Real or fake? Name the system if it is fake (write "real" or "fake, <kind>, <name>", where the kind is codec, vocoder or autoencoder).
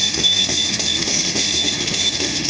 fake, autoencoder, DAC-VAE